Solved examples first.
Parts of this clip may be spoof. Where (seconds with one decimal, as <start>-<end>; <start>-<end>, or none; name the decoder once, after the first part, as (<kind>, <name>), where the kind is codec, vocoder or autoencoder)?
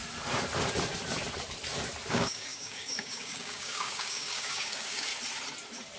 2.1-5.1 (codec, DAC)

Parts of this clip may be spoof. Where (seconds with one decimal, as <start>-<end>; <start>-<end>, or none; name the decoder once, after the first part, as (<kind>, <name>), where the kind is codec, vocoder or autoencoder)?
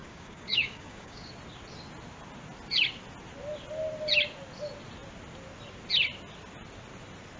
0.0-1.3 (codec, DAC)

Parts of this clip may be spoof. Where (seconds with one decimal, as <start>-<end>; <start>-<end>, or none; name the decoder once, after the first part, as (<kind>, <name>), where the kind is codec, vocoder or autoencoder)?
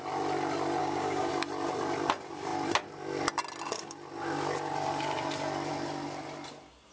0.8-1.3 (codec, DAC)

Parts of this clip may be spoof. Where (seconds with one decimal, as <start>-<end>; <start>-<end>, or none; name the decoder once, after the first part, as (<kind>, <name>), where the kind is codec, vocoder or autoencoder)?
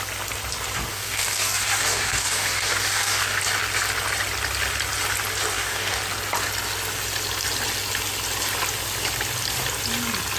0.9-3.4 (codec, DAC); 5.5-6.0